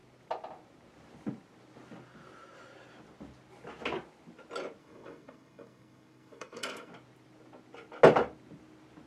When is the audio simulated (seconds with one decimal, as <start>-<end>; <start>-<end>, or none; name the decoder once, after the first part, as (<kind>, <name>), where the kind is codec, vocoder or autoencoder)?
4.8-6.9 (codec, SNAC)